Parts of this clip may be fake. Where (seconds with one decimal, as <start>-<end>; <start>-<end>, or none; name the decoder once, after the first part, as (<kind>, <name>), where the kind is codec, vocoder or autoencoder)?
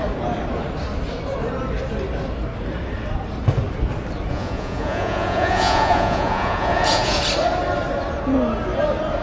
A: 4.3-7.2 (vocoder, Vocos)